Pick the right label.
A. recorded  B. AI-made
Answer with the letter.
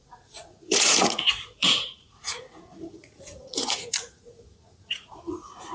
B